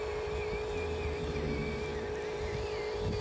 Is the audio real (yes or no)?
yes